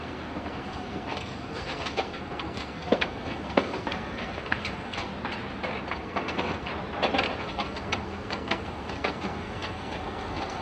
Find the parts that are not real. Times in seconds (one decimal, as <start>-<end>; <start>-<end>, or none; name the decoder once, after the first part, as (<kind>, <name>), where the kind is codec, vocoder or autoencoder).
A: 0.0-5.1 (codec, SNAC); 5.9-6.7; 7.4-10.6